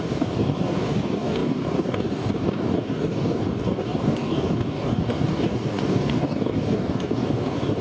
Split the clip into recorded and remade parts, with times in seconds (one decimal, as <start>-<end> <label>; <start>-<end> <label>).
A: 0.0-7.8 remade